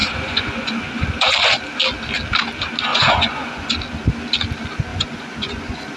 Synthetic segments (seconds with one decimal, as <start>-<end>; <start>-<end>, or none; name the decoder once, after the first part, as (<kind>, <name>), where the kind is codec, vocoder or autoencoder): 0.0-1.3 (vocoder, Vocos); 2.9-3.7; 4.9-6.0